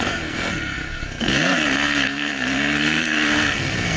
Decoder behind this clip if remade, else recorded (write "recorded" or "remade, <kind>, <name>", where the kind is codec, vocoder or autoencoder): remade, codec, SNAC